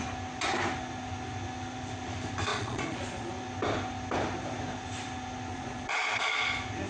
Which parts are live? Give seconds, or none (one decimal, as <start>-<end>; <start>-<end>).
0.0-2.5; 3.3-5.5; 6.2-6.9